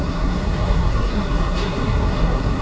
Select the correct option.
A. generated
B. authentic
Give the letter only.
A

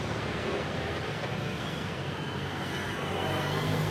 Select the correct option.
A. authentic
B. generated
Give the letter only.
B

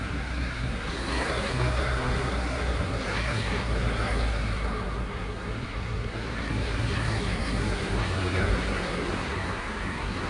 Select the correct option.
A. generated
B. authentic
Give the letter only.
A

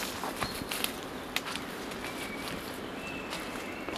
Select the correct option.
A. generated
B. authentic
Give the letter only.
B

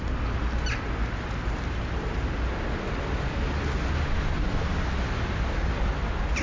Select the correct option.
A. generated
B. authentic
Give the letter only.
B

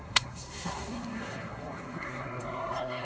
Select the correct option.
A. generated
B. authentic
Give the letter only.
A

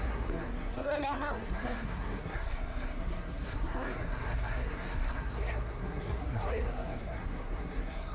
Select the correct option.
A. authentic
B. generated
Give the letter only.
B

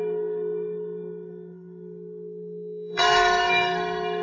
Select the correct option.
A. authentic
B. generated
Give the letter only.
B